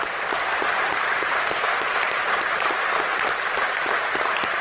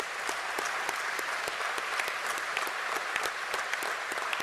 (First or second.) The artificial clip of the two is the first